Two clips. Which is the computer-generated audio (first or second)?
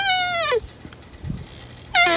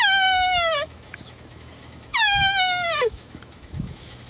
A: second